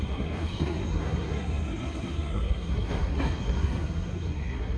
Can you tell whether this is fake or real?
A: fake